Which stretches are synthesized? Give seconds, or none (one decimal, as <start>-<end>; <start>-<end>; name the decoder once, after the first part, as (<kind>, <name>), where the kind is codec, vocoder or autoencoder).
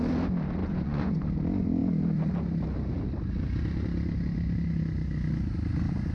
0.6-1.2 (vocoder, Vocos)